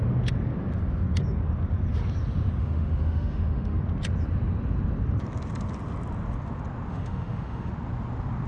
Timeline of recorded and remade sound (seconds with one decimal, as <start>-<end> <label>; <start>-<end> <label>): 0.0-2.6 recorded; 2.6-3.8 remade; 3.8-6.9 recorded; 6.9-7.7 remade; 7.7-8.5 recorded